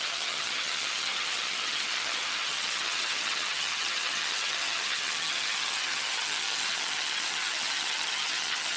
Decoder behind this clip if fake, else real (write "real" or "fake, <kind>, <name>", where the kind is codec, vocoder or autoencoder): fake, vocoder, HiFi-GAN